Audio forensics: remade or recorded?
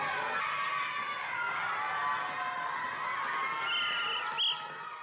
recorded